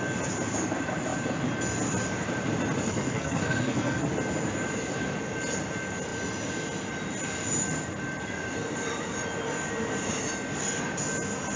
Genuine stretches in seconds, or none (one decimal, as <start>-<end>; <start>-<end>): 0.0-2.9; 4.1-11.6